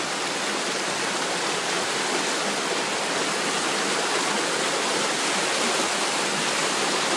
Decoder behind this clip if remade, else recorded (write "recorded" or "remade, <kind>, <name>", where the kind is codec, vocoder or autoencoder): recorded